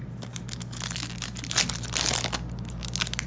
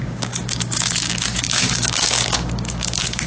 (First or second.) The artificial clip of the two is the second